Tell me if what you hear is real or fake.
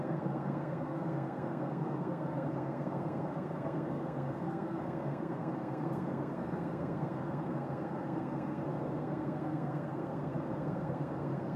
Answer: fake